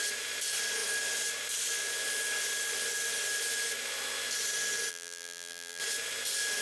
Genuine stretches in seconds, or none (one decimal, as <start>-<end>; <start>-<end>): 0.0-4.9; 5.8-6.6